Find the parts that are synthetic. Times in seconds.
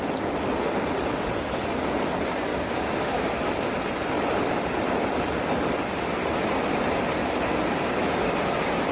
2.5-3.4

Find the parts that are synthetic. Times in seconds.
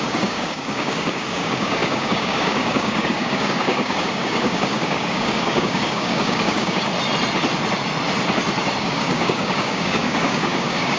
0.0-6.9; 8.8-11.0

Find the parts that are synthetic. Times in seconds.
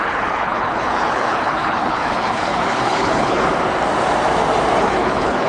0.0-3.5; 4.8-5.5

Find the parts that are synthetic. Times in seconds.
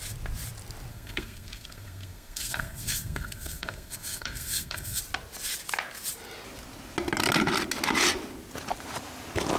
0.9-5.0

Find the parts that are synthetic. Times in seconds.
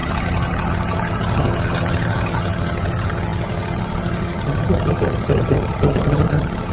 0.0-6.7